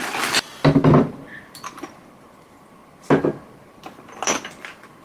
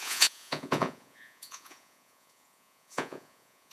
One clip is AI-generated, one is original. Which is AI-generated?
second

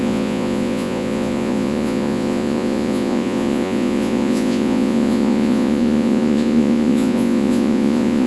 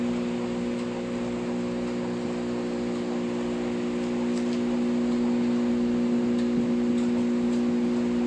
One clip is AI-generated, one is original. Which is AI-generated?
first